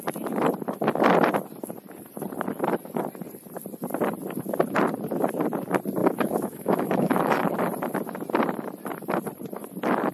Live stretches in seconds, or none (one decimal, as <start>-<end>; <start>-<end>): 0.0-6.0; 7.5-10.1